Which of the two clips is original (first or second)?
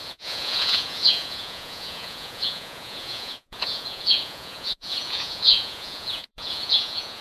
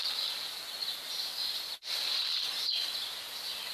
second